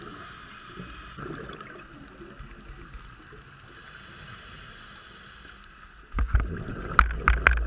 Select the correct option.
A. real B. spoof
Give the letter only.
A